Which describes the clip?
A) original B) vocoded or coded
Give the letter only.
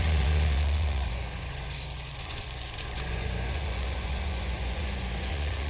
B